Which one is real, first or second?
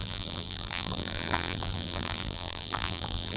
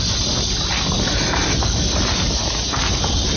second